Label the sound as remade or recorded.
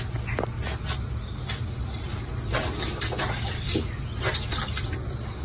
recorded